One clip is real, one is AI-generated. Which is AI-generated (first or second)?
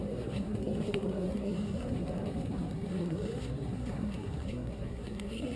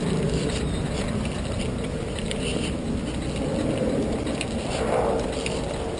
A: first